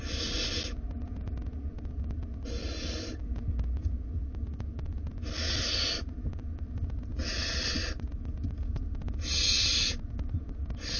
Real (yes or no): yes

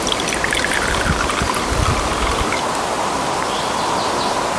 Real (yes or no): yes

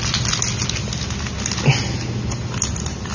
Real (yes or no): yes